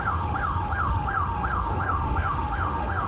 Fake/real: fake